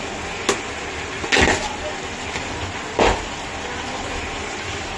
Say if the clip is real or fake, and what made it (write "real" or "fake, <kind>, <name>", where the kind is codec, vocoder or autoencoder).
real